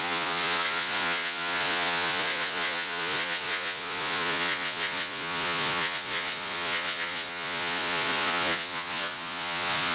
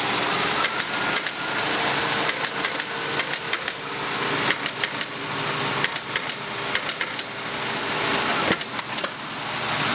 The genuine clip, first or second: second